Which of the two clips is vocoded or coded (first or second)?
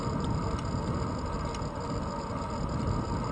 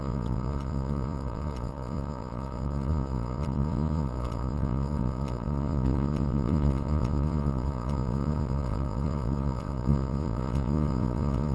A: second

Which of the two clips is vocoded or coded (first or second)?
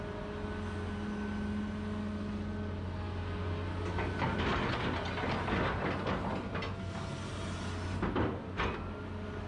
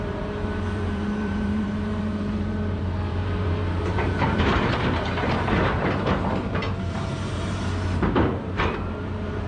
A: second